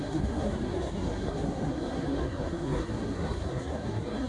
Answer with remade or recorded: remade